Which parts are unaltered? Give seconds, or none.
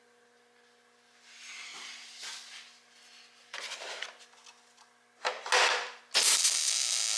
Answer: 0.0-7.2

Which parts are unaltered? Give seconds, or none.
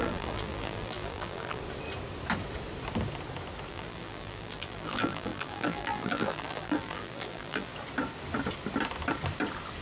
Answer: 1.6-3.7; 7.7-9.8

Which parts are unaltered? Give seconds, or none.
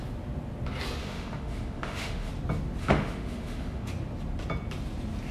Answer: 0.0-1.0; 2.3-2.8; 3.9-5.3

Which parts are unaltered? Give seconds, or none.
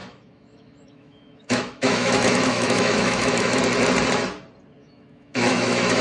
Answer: 3.6-4.8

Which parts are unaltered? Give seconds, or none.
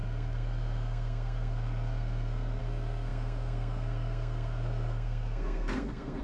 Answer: none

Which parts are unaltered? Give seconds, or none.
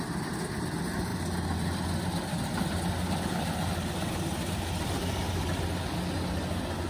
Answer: 0.0-6.9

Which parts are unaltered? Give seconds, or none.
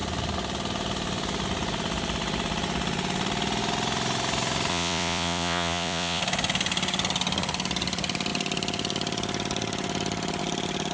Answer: 0.0-4.7; 6.2-10.9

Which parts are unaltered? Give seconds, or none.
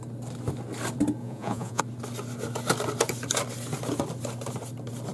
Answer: 0.0-1.2; 1.8-5.1